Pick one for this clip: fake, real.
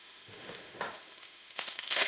fake